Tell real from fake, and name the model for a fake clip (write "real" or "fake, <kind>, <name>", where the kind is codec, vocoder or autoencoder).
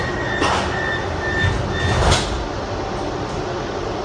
real